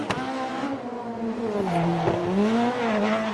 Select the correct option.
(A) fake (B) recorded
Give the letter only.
B